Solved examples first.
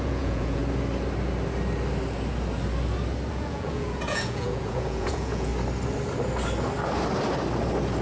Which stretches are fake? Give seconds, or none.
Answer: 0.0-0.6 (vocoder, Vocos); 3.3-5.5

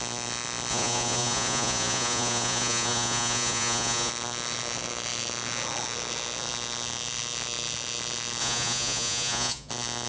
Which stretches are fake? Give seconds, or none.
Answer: 0.7-4.1 (vocoder, Vocos); 8.4-9.7